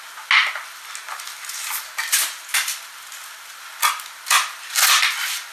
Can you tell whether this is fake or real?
real